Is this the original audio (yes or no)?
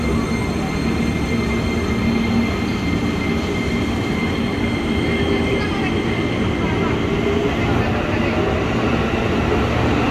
yes